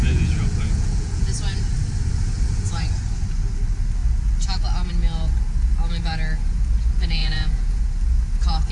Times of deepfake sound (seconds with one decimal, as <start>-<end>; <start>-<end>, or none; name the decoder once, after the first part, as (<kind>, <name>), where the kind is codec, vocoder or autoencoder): 0.0-1.3 (vocoder, Vocos); 7.2-7.8